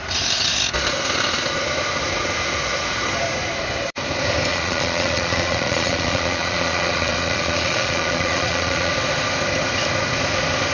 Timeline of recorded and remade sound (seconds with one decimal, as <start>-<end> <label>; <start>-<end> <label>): 0.0-4.5 recorded; 4.5-8.9 remade; 8.9-10.7 recorded